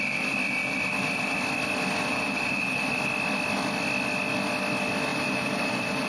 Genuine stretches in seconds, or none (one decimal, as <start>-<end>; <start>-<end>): 0.0-2.1; 2.9-5.1